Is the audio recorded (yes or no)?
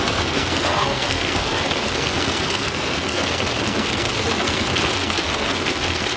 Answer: no